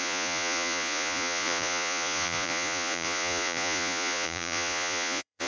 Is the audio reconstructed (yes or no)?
yes